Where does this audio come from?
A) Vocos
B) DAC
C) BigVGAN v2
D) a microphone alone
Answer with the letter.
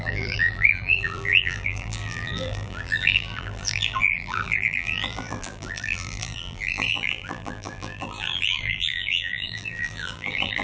C